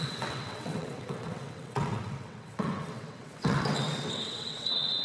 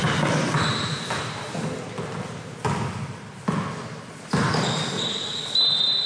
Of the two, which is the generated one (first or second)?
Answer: first